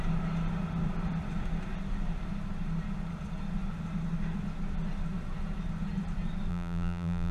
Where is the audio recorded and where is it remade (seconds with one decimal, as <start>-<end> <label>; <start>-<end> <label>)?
0.0-6.5 recorded; 6.5-7.3 remade

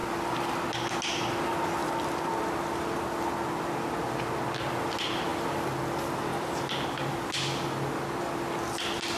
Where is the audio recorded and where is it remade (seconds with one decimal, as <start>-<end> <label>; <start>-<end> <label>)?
0.0-9.2 recorded

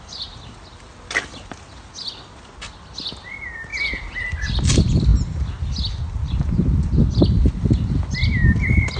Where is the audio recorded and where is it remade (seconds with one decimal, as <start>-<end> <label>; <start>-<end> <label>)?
0.0-9.0 recorded

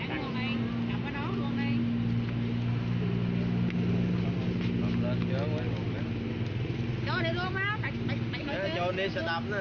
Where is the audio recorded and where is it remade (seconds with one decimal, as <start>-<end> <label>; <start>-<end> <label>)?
0.0-9.6 recorded

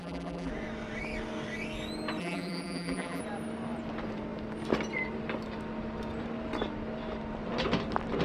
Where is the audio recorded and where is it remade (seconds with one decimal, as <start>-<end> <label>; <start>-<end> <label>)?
0.0-0.5 remade; 0.5-2.2 recorded; 2.2-3.2 remade; 3.2-8.2 recorded